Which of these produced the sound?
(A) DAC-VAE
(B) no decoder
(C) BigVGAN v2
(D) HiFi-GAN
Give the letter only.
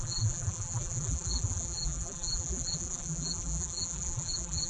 C